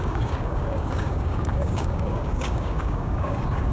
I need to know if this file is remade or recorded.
remade